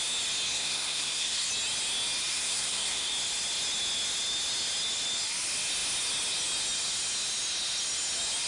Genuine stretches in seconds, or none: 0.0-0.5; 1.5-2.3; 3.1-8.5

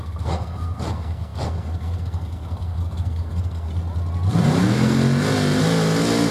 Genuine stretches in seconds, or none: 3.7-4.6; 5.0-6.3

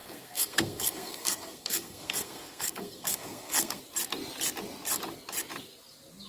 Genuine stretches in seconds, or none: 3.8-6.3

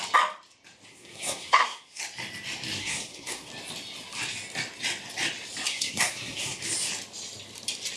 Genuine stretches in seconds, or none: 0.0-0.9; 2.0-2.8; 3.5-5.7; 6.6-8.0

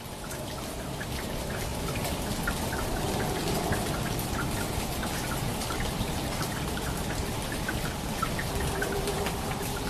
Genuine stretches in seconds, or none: 0.0-9.9

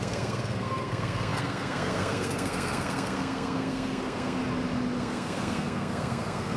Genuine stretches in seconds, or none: 4.4-5.0

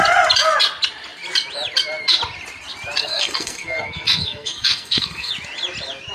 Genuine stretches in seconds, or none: 0.0-3.0; 5.3-6.1